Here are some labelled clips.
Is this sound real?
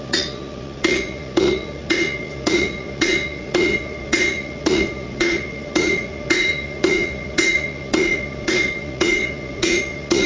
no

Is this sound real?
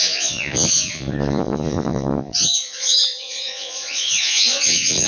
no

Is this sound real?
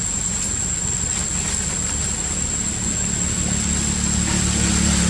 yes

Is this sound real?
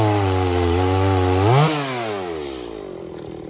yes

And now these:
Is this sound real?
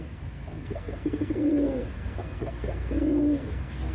no